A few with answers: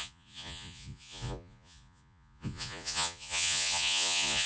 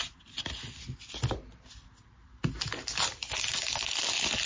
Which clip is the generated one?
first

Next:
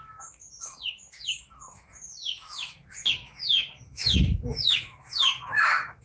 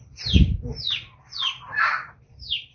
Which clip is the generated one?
first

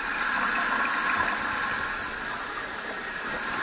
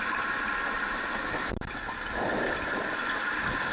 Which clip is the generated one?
first